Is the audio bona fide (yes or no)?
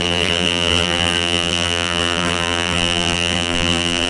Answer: no